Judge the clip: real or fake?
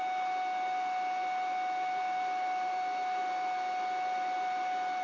real